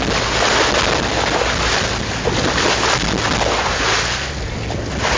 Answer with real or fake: real